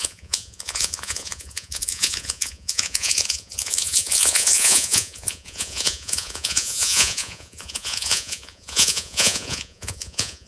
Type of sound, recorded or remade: remade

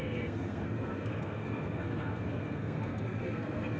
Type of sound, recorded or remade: remade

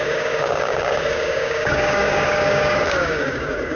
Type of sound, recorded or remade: remade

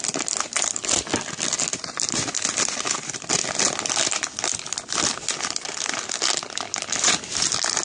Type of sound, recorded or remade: recorded